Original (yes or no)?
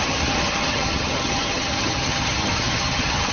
no